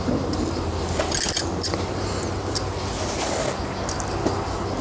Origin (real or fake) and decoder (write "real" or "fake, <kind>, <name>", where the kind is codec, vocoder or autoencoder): real